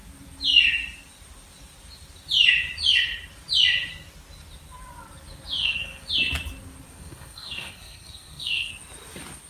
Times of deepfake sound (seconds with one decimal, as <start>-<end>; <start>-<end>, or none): 5.6-6.1; 6.9-8.7